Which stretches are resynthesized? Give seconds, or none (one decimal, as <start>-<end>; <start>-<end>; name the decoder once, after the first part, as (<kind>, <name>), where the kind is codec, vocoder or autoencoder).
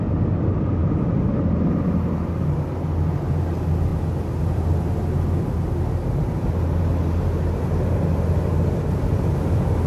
none